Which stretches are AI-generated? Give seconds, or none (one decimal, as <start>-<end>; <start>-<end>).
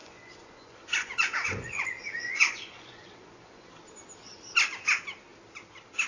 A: 0.0-3.7